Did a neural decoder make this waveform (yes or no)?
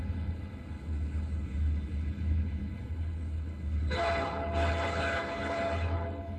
yes